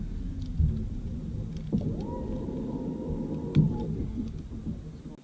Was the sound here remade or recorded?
recorded